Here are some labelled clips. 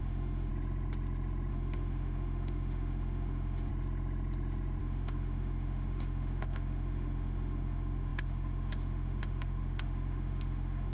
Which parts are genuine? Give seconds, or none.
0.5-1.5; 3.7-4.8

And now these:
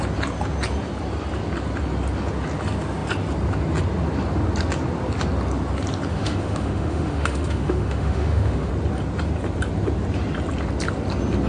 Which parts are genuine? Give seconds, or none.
0.0-6.1; 8.7-11.5

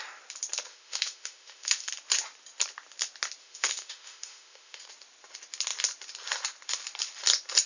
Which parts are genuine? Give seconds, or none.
0.0-0.7; 1.9-3.4; 4.8-7.7

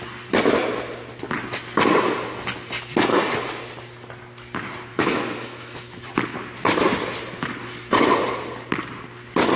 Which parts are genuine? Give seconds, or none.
0.0-4.9; 6.1-9.6

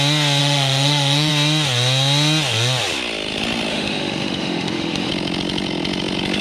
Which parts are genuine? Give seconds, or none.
0.0-0.4; 1.3-3.7; 5.1-6.4